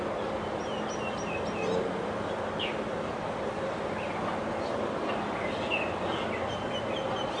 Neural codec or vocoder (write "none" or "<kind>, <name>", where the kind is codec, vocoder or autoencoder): none